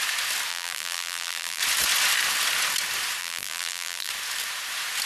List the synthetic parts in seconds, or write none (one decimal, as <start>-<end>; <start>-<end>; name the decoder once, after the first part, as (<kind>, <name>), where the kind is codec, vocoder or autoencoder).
0.5-1.6 (vocoder, BigVGAN v2); 3.2-4.1